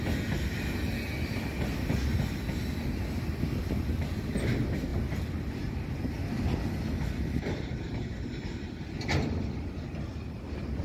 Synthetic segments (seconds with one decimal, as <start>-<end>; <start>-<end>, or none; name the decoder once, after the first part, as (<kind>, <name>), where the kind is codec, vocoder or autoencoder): none